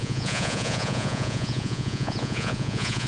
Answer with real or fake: fake